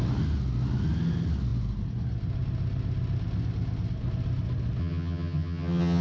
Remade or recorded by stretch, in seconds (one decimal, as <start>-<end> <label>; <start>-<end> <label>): 0.0-4.8 recorded; 4.8-6.0 remade